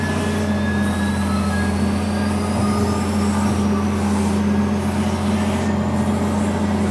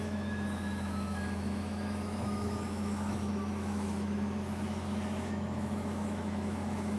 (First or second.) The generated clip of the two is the second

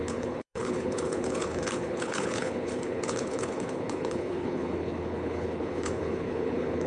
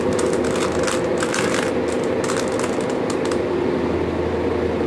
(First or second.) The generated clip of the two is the first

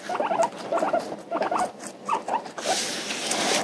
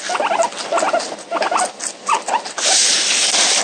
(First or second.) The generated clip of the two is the first